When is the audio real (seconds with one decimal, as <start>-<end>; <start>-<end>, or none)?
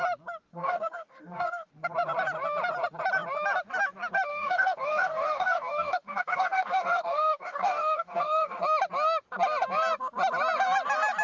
0.0-0.5; 1.7-4.3; 8.6-11.2